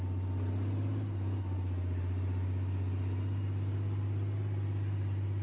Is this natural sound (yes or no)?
yes